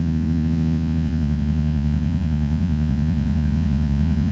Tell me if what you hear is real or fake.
fake